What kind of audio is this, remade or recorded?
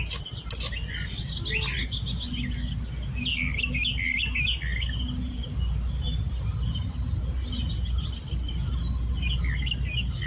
recorded